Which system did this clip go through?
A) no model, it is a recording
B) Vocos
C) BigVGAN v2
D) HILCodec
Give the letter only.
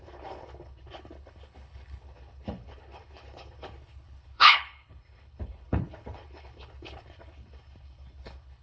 D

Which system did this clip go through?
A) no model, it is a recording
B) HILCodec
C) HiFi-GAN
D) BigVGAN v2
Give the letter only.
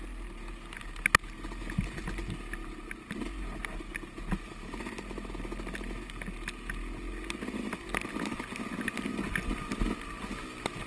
A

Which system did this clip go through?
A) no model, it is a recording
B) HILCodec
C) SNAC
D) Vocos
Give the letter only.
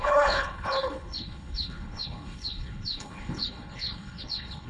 B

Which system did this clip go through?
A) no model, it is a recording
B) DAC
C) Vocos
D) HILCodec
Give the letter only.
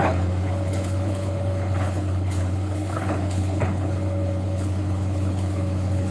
D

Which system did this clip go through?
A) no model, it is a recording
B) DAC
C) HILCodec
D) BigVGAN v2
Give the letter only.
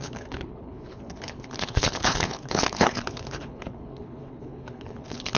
C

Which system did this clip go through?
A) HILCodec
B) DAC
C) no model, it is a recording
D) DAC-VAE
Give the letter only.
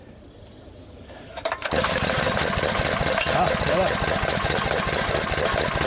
C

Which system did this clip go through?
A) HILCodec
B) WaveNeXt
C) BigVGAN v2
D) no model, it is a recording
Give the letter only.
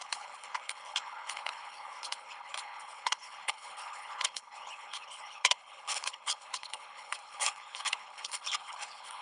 A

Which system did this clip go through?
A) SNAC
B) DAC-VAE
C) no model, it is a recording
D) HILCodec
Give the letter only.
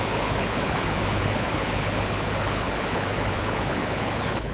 D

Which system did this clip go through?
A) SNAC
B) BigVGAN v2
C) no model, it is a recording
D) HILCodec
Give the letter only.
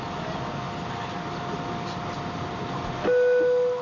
C